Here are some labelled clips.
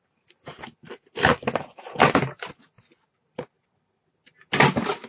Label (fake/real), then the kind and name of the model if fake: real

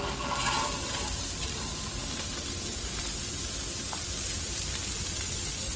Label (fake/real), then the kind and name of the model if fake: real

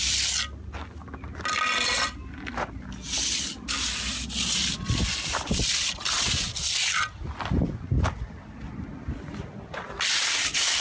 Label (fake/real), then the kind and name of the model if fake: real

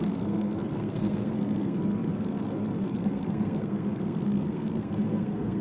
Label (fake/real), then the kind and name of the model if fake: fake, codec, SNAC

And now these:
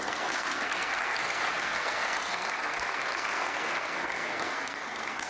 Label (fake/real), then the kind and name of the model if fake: fake, codec, SNAC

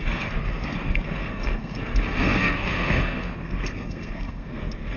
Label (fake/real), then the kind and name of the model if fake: fake, codec, SNAC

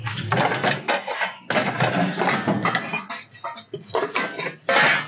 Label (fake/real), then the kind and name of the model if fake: real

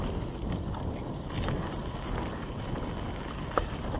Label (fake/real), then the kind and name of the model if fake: real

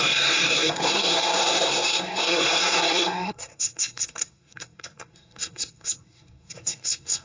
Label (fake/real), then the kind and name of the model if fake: fake, codec, SNAC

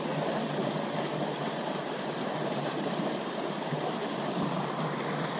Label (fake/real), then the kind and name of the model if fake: real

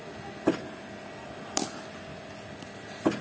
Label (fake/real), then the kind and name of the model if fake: real